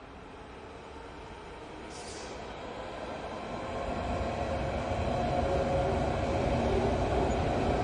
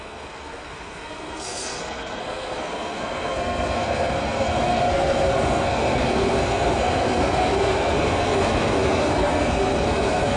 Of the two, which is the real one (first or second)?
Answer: first